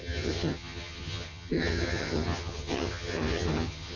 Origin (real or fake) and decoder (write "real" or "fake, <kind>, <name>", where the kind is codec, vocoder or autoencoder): fake, vocoder, HiFi-GAN